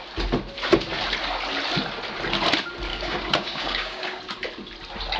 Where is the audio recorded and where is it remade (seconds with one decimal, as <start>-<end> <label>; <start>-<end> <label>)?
0.0-2.9 recorded; 2.9-4.2 remade; 4.2-5.2 recorded